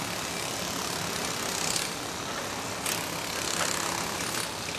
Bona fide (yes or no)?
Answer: yes